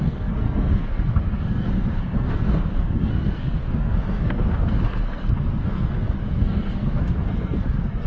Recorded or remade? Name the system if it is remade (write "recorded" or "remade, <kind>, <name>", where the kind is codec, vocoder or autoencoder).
remade, codec, SNAC